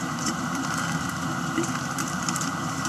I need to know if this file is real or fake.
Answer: fake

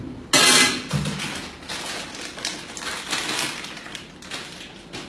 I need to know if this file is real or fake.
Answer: real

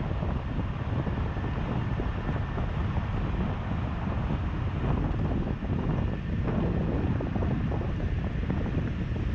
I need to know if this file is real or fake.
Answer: real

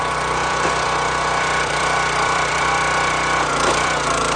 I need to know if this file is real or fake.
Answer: fake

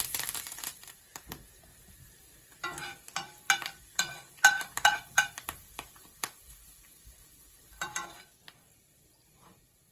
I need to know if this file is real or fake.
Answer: fake